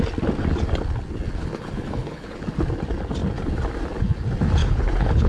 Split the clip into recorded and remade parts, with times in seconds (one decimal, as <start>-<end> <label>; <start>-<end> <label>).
0.0-1.4 recorded; 1.4-2.4 remade; 2.4-4.6 recorded; 4.6-5.3 remade